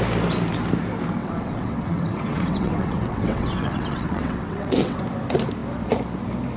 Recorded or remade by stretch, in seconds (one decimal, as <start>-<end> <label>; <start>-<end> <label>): 0.0-1.2 recorded; 1.2-5.0 remade; 5.0-6.6 recorded